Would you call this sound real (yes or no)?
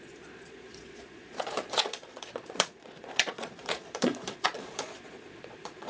no